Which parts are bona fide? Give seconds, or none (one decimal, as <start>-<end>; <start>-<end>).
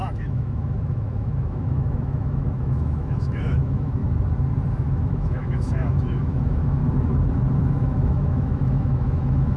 4.0-4.7; 6.8-7.6